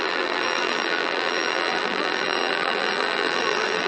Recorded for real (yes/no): no